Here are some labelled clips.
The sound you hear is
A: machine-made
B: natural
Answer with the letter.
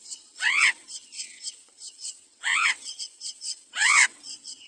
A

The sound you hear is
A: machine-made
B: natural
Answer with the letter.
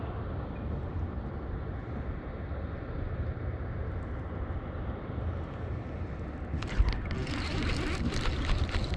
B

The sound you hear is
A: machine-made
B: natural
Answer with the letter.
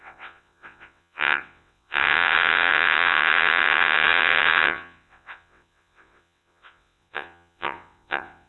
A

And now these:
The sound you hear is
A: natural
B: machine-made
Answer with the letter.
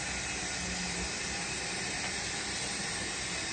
A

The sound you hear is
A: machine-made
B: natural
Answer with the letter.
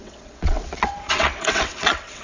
A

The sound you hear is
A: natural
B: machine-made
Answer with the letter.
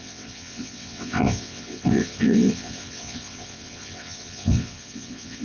B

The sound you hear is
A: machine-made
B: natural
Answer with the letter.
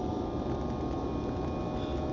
B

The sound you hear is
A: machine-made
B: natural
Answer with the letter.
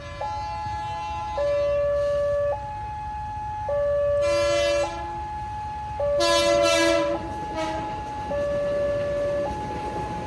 B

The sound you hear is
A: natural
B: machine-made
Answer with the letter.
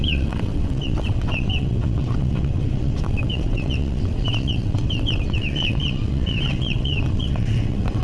B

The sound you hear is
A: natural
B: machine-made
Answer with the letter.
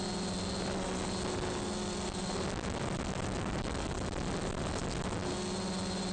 A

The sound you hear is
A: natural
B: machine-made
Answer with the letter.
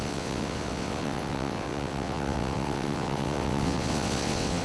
B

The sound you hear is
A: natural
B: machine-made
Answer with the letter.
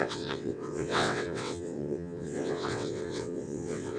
B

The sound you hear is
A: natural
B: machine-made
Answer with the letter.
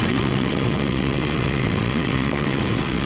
B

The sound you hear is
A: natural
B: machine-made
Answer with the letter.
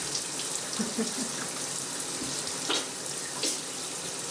A